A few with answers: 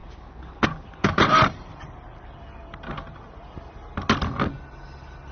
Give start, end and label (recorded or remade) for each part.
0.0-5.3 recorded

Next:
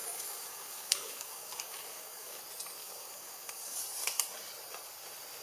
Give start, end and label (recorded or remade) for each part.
0.0-2.4 remade; 2.4-2.8 recorded; 2.8-3.8 remade; 3.8-5.4 recorded

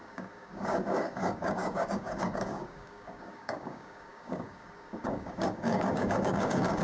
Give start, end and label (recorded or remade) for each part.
0.0-6.8 remade

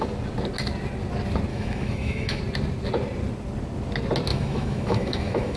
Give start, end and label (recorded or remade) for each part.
0.0-1.5 recorded; 1.5-2.4 remade; 2.4-4.3 recorded; 4.3-5.6 remade

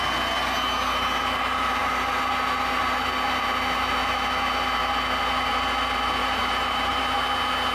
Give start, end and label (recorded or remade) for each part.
0.0-6.2 recorded; 6.2-7.0 remade; 7.0-7.7 recorded